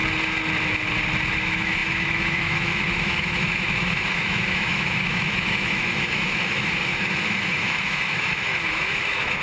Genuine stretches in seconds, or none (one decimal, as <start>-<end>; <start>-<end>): 0.0-1.3